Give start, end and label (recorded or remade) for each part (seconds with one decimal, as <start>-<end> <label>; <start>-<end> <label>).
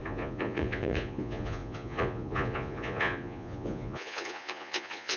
0.0-5.2 remade